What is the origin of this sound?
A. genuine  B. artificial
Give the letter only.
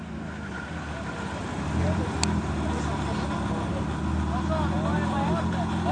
A